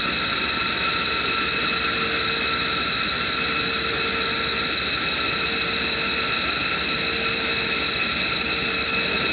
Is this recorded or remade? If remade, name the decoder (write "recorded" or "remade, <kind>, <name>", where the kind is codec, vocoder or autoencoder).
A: recorded